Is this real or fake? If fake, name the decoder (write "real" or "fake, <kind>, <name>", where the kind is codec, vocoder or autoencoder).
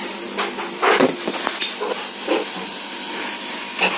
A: real